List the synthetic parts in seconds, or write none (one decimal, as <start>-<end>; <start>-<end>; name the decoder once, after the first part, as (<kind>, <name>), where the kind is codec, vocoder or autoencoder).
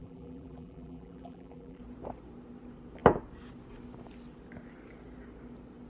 0.0-1.8 (vocoder, BigVGAN v2)